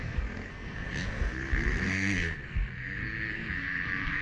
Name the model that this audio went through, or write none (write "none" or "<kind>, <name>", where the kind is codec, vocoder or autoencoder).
codec, SNAC